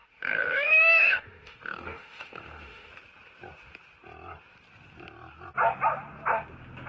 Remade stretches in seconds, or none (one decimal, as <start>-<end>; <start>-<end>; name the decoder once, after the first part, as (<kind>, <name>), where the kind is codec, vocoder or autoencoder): 0.0-2.9 (autoencoder, DAC-VAE)